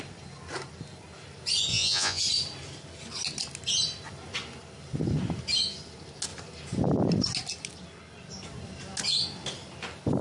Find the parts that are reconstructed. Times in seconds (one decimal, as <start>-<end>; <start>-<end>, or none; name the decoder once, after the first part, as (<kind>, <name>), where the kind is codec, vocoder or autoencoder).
1.7-2.2 (vocoder, Vocos)